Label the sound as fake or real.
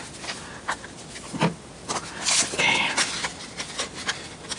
real